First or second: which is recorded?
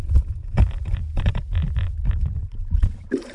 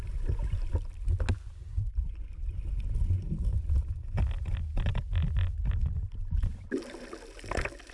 second